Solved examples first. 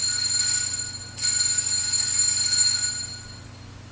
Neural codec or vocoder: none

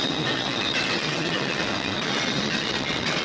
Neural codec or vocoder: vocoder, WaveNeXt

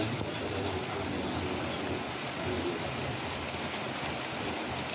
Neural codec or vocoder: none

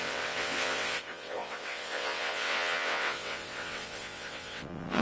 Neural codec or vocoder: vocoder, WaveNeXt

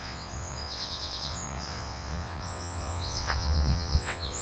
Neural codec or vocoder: vocoder, WaveNeXt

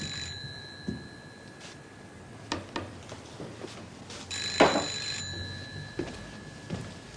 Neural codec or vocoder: none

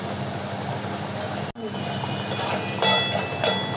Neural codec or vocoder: none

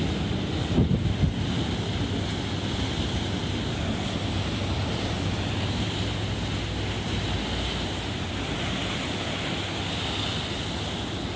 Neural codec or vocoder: none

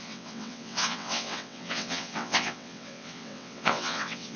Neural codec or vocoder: vocoder, WaveNeXt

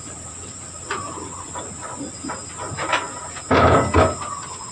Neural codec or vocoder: none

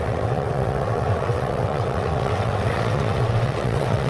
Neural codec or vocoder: vocoder, WaveNeXt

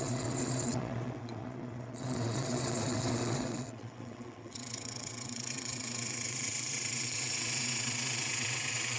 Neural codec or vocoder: vocoder, WaveNeXt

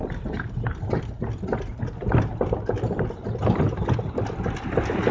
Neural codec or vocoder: none